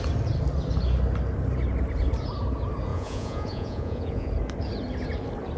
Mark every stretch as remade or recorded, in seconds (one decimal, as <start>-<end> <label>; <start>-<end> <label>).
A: 0.0-2.9 recorded; 2.9-4.3 remade; 4.3-5.6 recorded

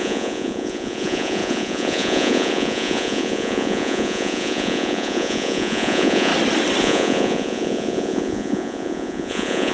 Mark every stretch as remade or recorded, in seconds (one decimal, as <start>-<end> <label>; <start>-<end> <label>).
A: 0.0-6.3 remade; 6.3-6.8 recorded; 6.8-9.7 remade

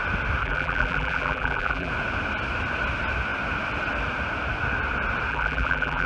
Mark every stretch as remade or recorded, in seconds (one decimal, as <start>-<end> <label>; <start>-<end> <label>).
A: 0.0-0.4 recorded; 0.4-1.9 remade; 1.9-5.3 recorded; 5.3-6.1 remade